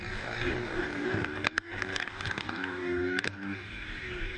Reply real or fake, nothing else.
fake